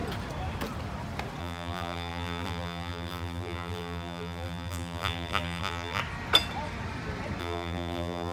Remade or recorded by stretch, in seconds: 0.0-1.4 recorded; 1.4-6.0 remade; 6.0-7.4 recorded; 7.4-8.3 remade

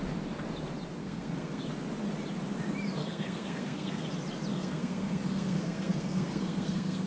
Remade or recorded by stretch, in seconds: 0.0-1.0 recorded; 1.0-1.6 remade; 1.6-3.0 recorded; 3.0-4.1 remade; 4.1-4.5 recorded; 4.5-7.1 remade

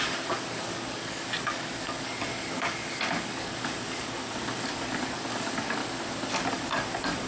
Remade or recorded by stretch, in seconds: 0.0-5.8 remade; 5.8-6.5 recorded; 6.5-7.3 remade

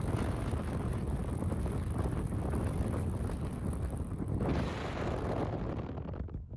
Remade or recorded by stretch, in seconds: 0.0-4.8 remade; 4.8-5.4 recorded; 5.4-6.6 remade

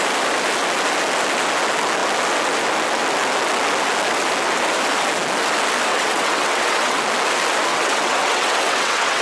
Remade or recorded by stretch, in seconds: 0.0-5.9 recorded; 5.9-7.0 remade; 7.0-7.7 recorded; 7.7-9.2 remade